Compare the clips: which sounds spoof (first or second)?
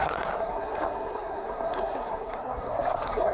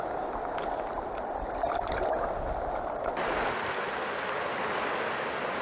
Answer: first